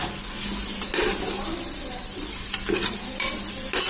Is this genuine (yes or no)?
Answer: yes